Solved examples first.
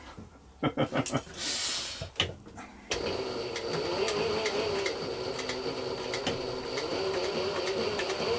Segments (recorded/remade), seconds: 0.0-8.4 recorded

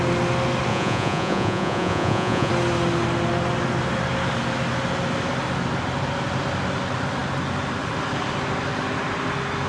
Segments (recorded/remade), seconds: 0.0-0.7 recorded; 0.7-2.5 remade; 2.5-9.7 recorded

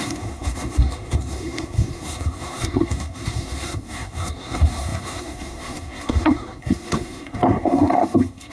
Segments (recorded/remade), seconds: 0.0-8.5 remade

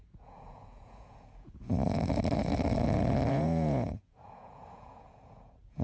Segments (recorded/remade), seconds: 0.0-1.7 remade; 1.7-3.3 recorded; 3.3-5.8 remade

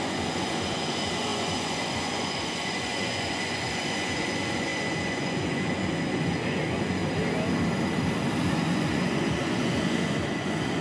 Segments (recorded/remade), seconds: 0.0-7.0 remade; 7.0-8.4 recorded; 8.4-10.8 remade